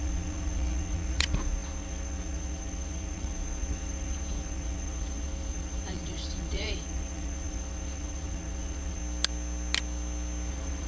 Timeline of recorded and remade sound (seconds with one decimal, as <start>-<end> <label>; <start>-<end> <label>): 0.0-9.0 remade; 9.0-10.5 recorded; 10.5-10.9 remade